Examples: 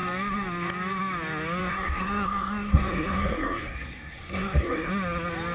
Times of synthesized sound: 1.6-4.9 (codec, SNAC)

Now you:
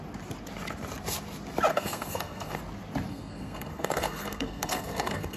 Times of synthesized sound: 1.7-2.6 (codec, SNAC); 3.1-5.4

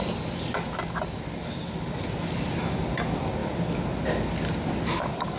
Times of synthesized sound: none